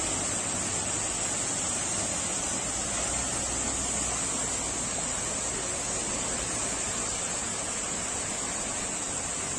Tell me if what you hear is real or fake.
real